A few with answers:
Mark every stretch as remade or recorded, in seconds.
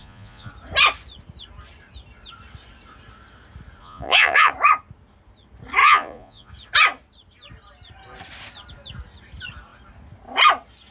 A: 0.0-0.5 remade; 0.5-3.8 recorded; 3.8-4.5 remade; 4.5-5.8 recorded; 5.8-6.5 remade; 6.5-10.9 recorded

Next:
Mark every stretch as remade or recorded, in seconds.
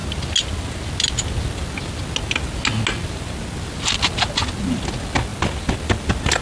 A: 0.0-6.4 recorded